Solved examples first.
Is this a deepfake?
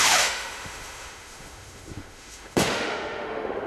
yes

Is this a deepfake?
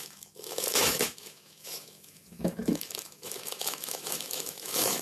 yes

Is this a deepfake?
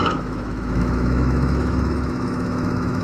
yes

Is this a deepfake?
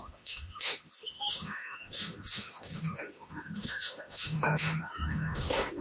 yes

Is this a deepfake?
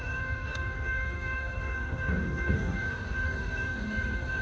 yes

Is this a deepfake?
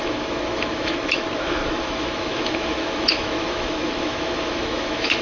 yes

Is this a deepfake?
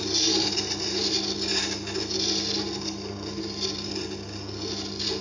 no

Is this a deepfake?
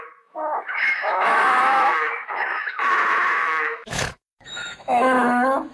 yes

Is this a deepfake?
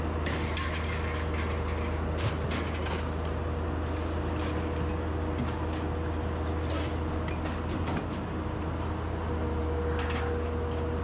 no